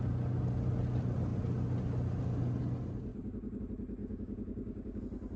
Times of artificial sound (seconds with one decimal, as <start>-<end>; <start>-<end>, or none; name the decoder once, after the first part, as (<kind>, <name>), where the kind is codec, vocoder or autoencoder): 3.1-3.6 (codec, DAC); 4.0-5.0